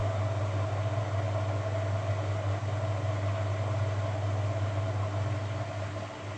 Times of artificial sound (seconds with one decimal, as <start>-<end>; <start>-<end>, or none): none